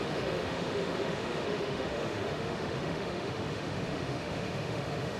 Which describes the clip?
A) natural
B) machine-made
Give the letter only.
B